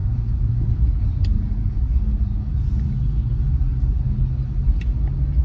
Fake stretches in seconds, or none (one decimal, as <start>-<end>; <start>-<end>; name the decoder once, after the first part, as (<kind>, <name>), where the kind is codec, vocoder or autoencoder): 0.0-3.2 (vocoder, Vocos)